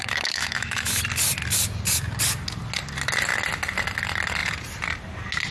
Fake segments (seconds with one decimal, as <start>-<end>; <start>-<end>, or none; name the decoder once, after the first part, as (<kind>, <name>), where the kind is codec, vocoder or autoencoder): 0.0-0.9 (autoencoder, DAC-VAE)